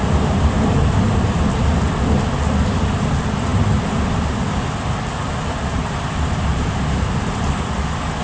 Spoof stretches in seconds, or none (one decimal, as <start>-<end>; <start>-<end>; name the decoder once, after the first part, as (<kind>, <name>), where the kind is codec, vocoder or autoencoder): none

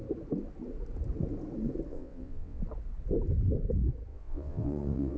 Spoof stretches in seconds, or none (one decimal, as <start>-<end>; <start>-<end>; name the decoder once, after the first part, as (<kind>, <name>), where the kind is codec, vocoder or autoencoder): 1.9-2.6 (vocoder, WaveNeXt); 4.1-5.2

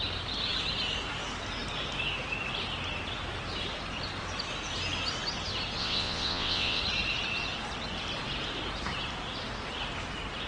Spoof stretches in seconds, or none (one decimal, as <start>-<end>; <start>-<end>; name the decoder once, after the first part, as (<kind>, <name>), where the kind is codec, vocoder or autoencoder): 5.8-6.8 (vocoder, WaveNeXt)

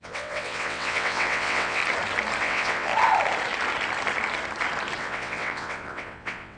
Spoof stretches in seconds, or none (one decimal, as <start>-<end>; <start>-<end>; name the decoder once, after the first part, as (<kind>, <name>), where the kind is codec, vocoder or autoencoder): 0.0-1.8 (vocoder, WaveNeXt); 2.4-2.9; 5.0-6.6

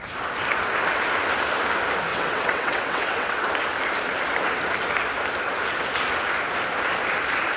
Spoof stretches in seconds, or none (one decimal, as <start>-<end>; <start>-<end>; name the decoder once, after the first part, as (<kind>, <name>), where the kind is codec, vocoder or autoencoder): 2.1-3.5 (vocoder, WaveNeXt)

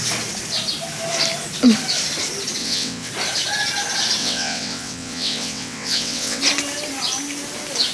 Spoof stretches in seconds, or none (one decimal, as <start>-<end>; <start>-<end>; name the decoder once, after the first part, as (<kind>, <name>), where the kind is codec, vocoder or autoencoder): 2.6-3.1 (vocoder, WaveNeXt); 4.2-6.4

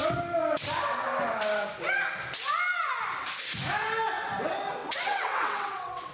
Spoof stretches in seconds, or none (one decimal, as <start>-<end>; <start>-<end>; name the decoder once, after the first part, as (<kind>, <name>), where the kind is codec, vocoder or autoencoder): 4.8-6.1 (vocoder, WaveNeXt)

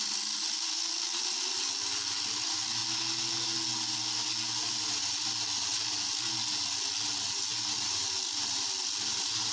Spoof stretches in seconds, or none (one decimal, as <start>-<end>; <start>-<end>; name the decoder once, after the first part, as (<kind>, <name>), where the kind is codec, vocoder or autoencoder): none